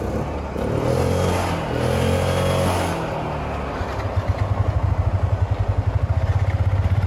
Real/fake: real